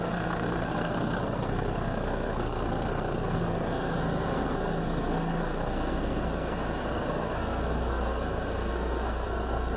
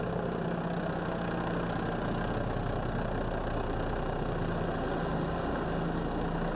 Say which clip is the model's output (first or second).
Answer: first